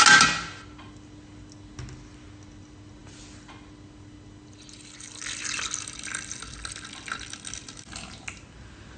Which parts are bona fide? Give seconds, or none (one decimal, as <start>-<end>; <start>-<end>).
0.0-9.0